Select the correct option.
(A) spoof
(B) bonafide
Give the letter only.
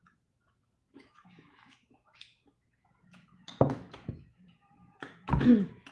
A